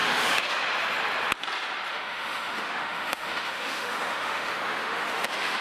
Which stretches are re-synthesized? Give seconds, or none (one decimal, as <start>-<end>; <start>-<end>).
0.0-0.5; 1.9-5.6